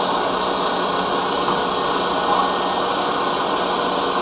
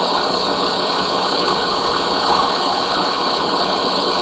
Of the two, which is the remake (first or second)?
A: second